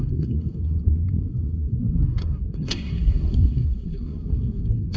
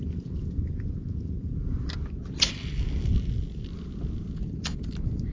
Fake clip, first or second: first